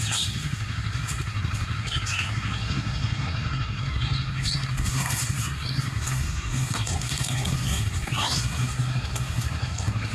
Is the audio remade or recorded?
remade